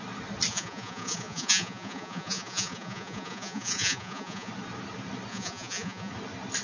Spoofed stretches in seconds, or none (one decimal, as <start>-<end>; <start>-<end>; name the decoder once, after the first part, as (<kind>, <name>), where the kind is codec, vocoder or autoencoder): 0.5-4.5 (vocoder, Vocos); 5.3-6.1